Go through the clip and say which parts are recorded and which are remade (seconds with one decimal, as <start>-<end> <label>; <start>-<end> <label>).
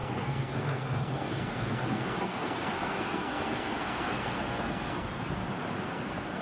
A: 0.0-5.4 remade; 5.4-5.9 recorded; 5.9-6.4 remade